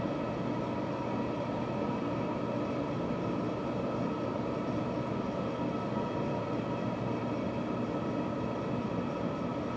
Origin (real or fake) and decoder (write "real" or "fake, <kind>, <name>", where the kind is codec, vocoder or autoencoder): real